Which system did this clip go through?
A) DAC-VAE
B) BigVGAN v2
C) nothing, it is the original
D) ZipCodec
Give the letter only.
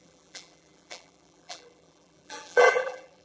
B